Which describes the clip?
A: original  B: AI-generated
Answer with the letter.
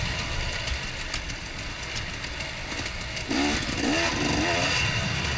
A